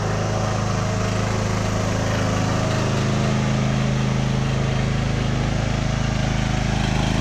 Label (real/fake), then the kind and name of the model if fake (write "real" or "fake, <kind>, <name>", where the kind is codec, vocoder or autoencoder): real